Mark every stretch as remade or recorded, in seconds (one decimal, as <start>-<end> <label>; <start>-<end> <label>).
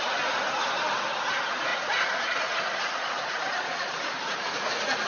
0.0-1.7 recorded; 1.7-5.1 remade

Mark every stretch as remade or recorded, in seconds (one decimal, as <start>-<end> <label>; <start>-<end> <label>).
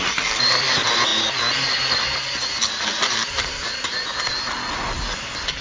0.0-5.6 recorded